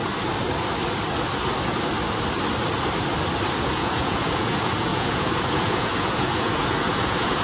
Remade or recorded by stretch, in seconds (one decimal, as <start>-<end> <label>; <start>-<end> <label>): 0.0-3.6 recorded; 3.6-7.4 remade